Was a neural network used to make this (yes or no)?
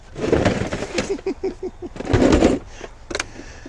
no